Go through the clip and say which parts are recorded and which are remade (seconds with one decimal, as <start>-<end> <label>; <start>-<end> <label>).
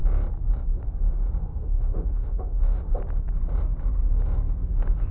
0.0-1.4 recorded; 1.4-2.8 remade; 2.8-5.1 recorded